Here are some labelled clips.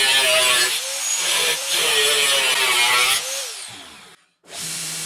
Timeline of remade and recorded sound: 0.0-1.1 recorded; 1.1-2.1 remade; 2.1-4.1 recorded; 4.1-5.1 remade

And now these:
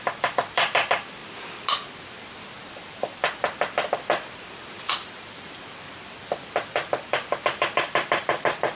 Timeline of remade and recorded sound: 0.0-8.8 remade

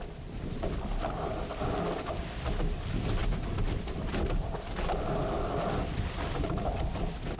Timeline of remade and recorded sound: 0.0-3.2 recorded; 3.2-4.5 remade; 4.5-7.4 recorded

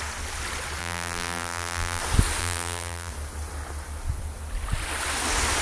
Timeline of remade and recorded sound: 0.0-0.8 recorded; 0.8-2.0 remade; 2.0-2.4 recorded; 2.4-3.1 remade; 3.1-5.6 recorded

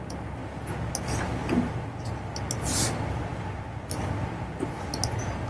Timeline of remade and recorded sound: 0.0-5.5 recorded

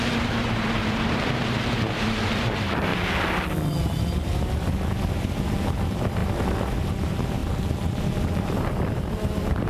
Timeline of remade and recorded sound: 0.0-2.9 remade; 2.9-3.8 recorded; 3.8-9.7 remade

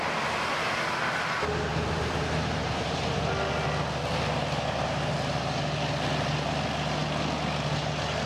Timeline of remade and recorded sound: 0.0-1.7 recorded; 1.7-3.2 remade; 3.2-8.3 recorded

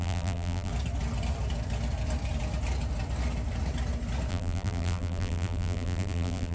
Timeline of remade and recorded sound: 0.0-0.7 remade; 0.7-4.3 recorded; 4.3-6.5 remade